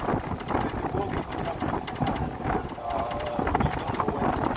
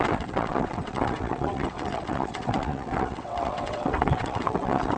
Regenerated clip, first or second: second